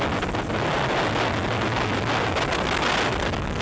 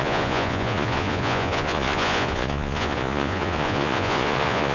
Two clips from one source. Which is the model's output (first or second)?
second